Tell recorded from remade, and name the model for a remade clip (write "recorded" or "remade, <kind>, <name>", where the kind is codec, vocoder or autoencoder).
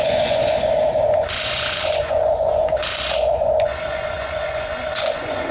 remade, vocoder, Vocos